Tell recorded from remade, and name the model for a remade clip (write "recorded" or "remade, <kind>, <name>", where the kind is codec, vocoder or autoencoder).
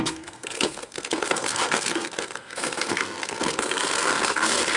remade, codec, SNAC